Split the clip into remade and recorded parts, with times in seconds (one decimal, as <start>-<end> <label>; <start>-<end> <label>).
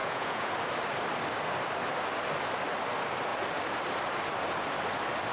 0.0-0.5 remade; 0.5-5.3 recorded